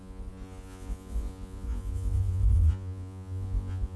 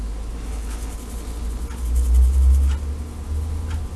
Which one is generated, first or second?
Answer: first